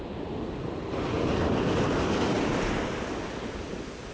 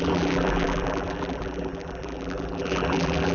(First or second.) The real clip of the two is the first